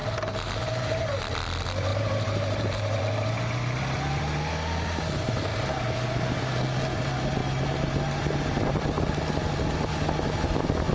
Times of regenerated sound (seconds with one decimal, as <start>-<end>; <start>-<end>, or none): 0.0-1.2; 1.9-3.0